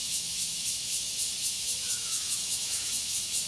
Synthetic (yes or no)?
yes